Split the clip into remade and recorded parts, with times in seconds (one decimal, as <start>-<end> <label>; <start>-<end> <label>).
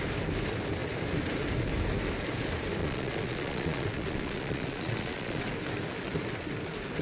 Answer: 0.0-2.8 recorded; 2.8-5.4 remade; 5.4-7.0 recorded